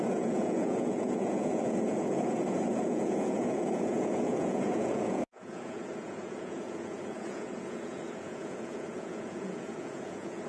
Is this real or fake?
fake